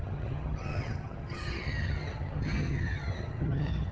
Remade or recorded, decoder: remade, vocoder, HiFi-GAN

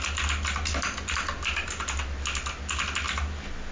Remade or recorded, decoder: recorded